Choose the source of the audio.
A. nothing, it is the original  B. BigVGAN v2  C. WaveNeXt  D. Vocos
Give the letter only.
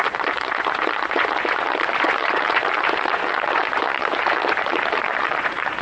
D